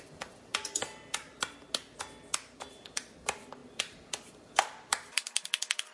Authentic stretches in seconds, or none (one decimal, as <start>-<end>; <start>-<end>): 0.5-2.7